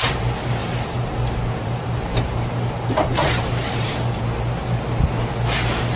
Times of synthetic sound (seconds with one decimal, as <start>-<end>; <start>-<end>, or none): 0.6-4.2